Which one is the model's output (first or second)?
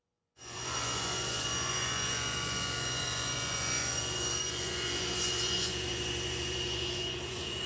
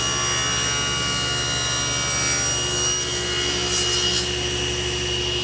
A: first